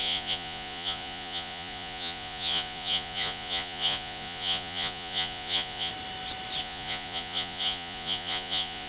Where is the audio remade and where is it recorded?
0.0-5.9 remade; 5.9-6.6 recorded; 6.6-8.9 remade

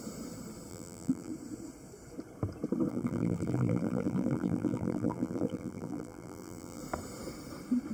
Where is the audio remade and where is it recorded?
0.0-0.7 recorded; 0.7-1.3 remade; 1.3-2.9 recorded; 2.9-6.8 remade; 6.8-7.9 recorded

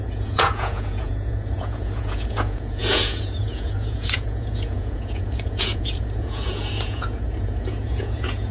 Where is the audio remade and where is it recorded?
0.0-8.5 remade

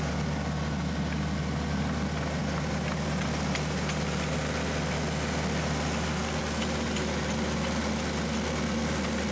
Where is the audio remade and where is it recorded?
0.0-9.3 recorded

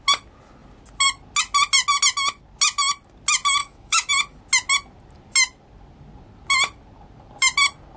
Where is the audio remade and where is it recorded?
0.0-3.6 recorded; 3.6-4.1 remade; 4.1-8.0 recorded

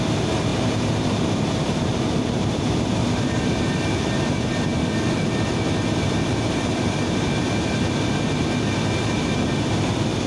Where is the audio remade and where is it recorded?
0.0-0.5 recorded; 0.5-3.4 remade; 3.4-10.3 recorded

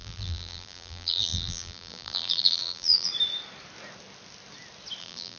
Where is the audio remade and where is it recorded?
0.0-3.1 remade; 3.1-5.0 recorded; 5.0-5.4 remade